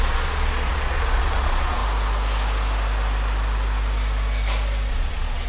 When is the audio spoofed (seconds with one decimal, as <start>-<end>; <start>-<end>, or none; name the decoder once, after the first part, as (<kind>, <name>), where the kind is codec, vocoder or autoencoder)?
0.0-1.8 (vocoder, Vocos); 4.9-5.5